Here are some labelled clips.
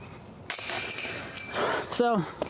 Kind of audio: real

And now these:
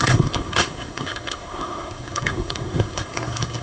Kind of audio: fake